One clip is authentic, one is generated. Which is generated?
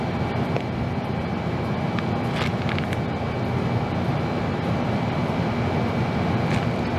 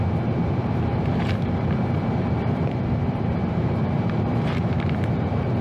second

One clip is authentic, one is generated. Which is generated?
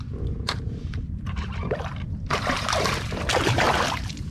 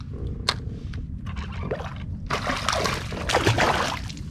first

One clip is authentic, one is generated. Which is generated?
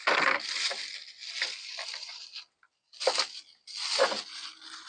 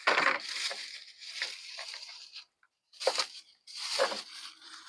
second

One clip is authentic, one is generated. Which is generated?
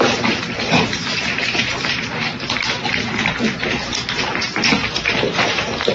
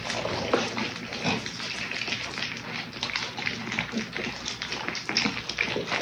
first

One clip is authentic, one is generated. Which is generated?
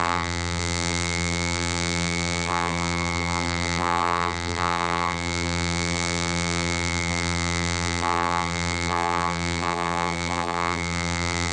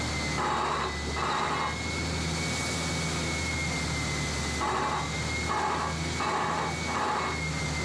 first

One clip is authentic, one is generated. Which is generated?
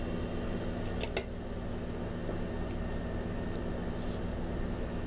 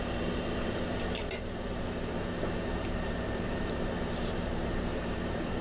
second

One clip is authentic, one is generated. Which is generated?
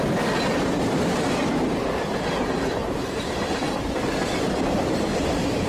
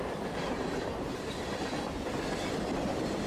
second